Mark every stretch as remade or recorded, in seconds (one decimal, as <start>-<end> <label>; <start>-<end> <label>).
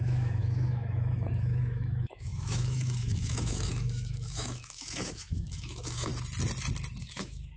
0.0-6.1 remade; 6.1-7.0 recorded; 7.0-7.6 remade